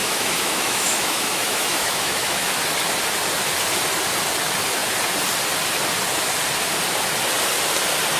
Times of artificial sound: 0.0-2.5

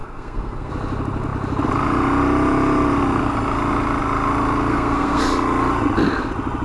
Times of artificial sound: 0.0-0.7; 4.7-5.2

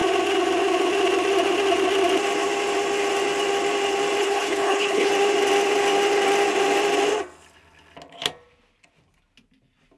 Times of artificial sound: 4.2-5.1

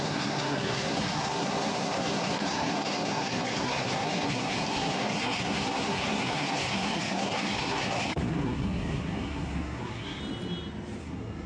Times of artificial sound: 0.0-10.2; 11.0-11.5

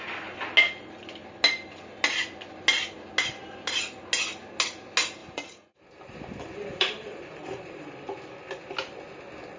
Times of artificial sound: 5.2-7.9

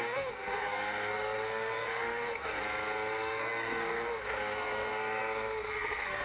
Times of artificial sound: 0.0-2.6; 3.1-6.2

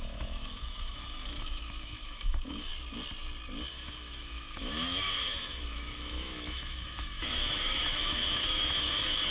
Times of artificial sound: 0.0-2.7; 3.7-9.3